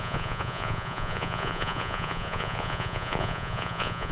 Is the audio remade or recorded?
remade